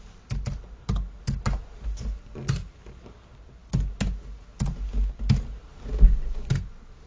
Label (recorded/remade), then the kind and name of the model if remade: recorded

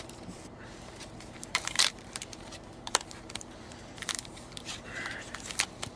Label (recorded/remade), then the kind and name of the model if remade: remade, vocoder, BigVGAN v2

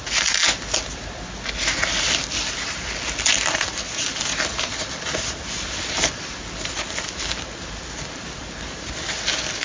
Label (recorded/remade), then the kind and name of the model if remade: recorded